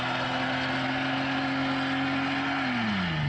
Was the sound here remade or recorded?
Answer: recorded